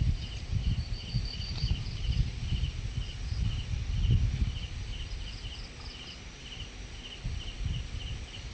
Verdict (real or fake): real